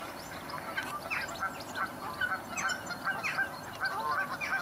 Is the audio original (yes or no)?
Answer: yes